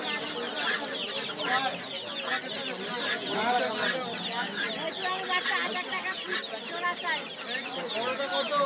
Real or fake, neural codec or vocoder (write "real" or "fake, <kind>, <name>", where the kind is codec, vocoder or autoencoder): real